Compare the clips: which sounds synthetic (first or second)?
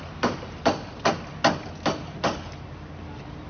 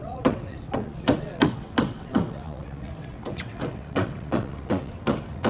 second